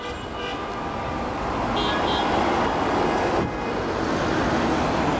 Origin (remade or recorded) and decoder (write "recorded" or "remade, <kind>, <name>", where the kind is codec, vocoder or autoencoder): recorded